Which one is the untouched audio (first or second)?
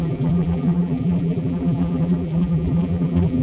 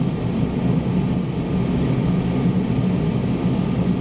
second